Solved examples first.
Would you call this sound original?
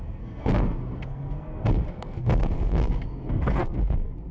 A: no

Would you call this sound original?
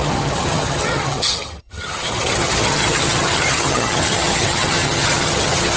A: no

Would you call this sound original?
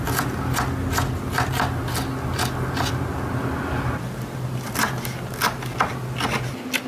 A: yes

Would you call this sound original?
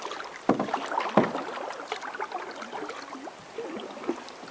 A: yes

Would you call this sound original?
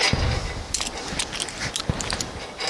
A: yes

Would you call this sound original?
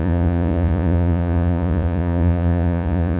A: no